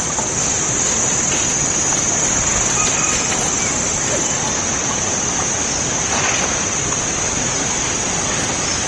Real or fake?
real